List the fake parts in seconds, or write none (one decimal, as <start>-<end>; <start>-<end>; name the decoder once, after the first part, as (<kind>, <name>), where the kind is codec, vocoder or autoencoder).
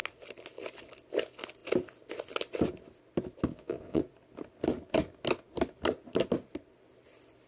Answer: 3.5-4.0 (vocoder, Vocos)